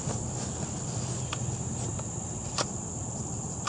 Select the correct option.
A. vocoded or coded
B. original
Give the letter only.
B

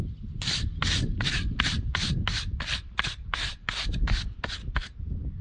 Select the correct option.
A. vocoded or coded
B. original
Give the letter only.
B